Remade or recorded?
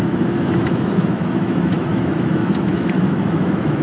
remade